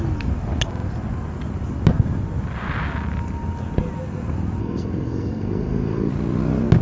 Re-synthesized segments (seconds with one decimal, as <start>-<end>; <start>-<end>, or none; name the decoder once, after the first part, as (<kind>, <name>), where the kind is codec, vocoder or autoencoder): 4.6-6.1 (codec, SNAC)